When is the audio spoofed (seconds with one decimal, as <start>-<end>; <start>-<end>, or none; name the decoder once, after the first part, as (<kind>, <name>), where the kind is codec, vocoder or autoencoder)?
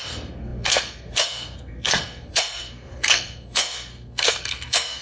0.0-5.0 (codec, SNAC)